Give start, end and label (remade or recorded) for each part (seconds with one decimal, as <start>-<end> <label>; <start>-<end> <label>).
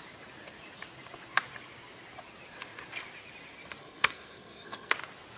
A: 0.0-3.8 recorded; 3.8-4.9 remade; 4.9-5.4 recorded